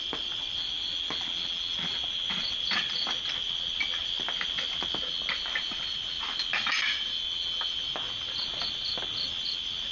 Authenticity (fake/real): real